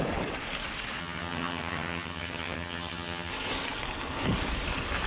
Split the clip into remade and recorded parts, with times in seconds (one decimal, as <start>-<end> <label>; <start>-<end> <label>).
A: 0.0-1.0 recorded; 1.0-3.3 remade; 3.3-5.1 recorded